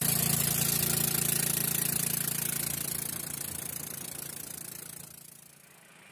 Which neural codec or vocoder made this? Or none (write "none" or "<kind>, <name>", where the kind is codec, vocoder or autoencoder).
none